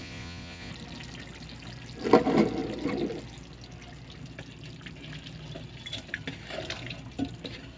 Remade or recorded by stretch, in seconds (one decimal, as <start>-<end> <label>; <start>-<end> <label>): 0.0-0.7 remade; 0.7-7.8 recorded